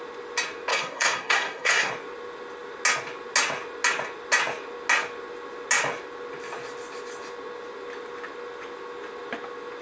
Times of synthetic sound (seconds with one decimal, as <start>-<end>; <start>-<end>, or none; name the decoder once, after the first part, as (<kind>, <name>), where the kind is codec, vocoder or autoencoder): 0.7-1.9 (codec, SNAC)